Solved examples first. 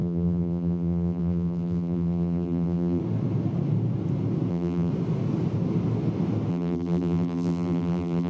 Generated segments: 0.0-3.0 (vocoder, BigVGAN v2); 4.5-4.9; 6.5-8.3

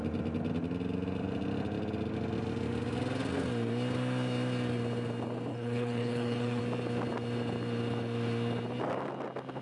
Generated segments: 5.5-6.6 (codec, HILCodec)